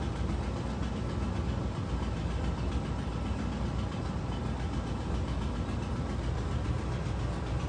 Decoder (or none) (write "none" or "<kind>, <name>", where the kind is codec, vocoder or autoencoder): none